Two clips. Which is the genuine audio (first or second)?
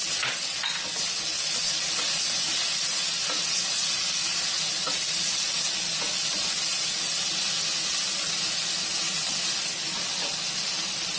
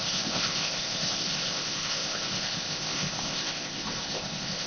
first